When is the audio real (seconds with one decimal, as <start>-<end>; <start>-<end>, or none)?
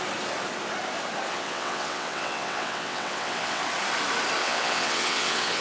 0.0-1.3; 3.6-4.4